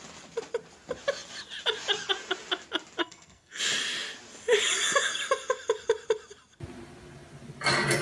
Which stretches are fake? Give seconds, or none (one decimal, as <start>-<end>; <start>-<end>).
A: 3.0-3.6